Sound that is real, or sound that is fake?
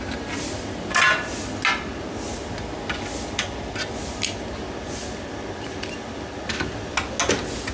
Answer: real